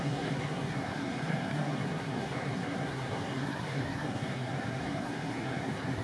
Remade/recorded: remade